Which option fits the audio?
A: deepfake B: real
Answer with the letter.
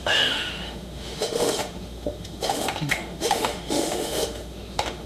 A